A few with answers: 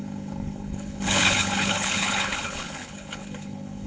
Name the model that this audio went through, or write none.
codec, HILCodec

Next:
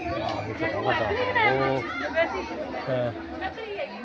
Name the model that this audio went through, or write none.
none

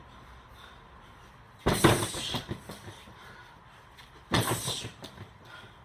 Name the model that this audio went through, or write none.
none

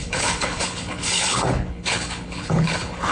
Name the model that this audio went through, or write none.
codec, HILCodec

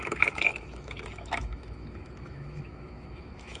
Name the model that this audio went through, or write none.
autoencoder, DAC-VAE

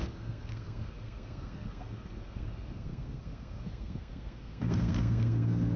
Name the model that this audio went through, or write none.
codec, SNAC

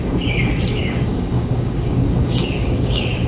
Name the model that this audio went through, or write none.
codec, DAC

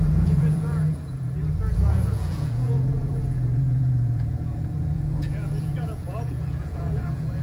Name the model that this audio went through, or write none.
vocoder, Vocos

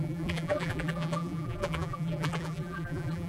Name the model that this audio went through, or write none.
vocoder, BigVGAN v2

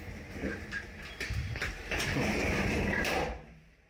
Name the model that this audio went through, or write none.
vocoder, BigVGAN v2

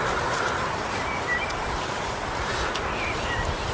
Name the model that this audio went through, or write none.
none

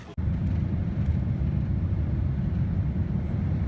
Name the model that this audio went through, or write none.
none